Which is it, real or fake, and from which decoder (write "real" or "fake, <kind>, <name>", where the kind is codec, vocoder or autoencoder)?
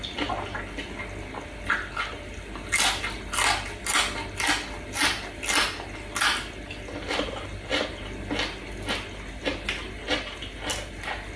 real